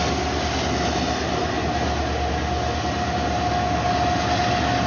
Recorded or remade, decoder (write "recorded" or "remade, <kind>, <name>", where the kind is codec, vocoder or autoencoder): recorded